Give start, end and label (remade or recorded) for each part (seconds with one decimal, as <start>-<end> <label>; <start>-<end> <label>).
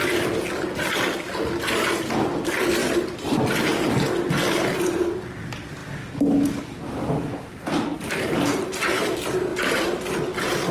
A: 0.0-2.8 recorded; 2.8-3.4 remade; 3.4-7.9 recorded; 7.9-8.6 remade; 8.6-9.5 recorded; 9.5-10.2 remade; 10.2-10.7 recorded